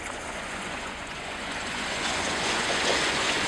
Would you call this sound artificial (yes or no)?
yes